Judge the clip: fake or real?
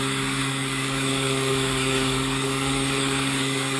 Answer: fake